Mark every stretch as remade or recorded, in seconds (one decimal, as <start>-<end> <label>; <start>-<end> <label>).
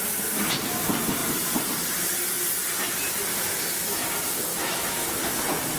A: 0.0-3.3 recorded; 3.3-4.0 remade; 4.0-4.5 recorded; 4.5-5.2 remade; 5.2-5.8 recorded